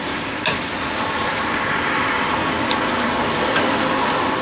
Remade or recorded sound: remade